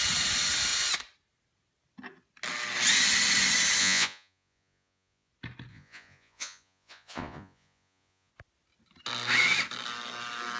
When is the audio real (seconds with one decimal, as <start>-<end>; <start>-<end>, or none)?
0.0-3.8; 5.3-5.7; 8.3-10.6